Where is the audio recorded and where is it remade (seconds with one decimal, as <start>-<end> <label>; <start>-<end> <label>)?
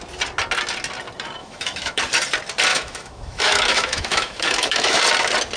0.0-1.4 recorded; 1.4-2.0 remade; 2.0-2.7 recorded; 2.7-5.0 remade; 5.0-5.6 recorded